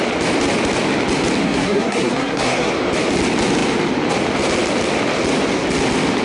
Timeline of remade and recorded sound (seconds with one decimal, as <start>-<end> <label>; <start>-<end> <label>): 0.0-1.4 recorded; 1.4-2.7 remade; 2.7-6.2 recorded